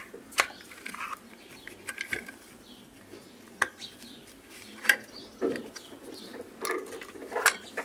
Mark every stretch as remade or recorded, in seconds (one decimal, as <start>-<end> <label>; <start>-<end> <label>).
0.0-7.8 recorded